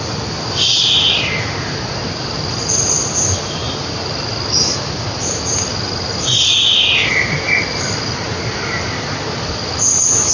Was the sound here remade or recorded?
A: recorded